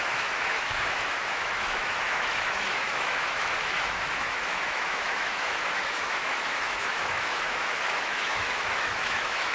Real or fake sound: fake